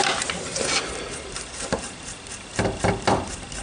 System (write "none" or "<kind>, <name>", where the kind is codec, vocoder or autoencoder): none